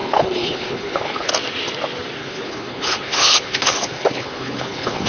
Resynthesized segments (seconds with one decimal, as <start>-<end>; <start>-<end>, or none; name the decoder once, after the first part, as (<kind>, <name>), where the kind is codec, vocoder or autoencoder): 0.0-1.3 (codec, HILCodec); 2.2-5.1